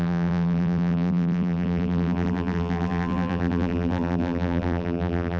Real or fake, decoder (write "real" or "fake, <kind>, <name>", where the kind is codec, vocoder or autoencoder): fake, vocoder, BigVGAN v2